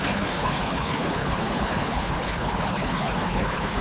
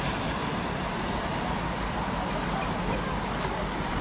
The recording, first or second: second